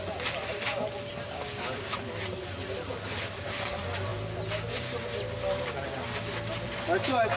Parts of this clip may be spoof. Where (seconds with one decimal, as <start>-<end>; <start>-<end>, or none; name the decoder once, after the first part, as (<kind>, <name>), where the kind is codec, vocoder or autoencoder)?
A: none